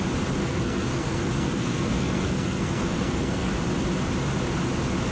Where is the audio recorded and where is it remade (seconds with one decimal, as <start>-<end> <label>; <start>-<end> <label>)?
0.0-0.4 recorded; 0.4-3.5 remade; 3.5-5.1 recorded